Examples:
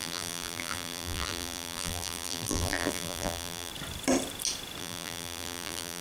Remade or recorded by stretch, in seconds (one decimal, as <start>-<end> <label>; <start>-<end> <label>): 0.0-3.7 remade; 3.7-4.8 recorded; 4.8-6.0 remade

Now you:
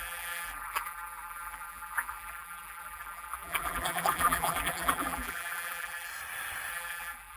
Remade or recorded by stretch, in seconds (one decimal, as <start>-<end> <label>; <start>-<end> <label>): 0.0-6.1 remade; 6.1-6.7 recorded; 6.7-7.4 remade

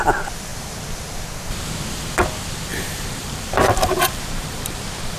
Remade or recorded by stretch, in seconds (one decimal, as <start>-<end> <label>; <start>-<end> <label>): 0.0-2.7 recorded; 2.7-4.8 remade; 4.8-5.2 recorded